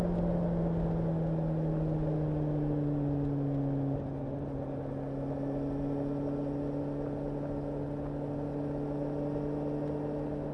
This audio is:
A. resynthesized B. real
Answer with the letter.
B